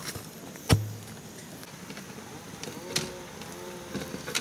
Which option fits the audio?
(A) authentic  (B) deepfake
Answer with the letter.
A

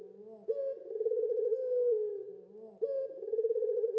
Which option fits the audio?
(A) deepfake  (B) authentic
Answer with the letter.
B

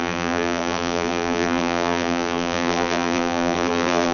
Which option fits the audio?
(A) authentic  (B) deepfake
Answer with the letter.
B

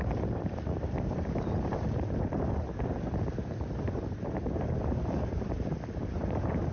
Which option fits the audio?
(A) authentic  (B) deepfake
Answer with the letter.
B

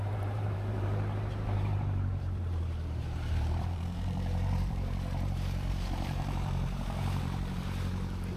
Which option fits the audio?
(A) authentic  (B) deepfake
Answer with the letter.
B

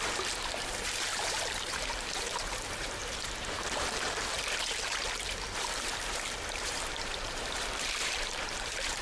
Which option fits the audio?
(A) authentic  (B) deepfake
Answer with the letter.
B